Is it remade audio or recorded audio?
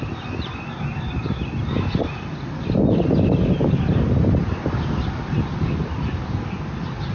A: recorded